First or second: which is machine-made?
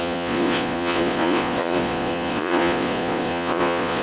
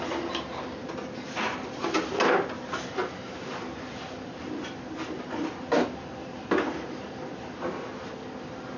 first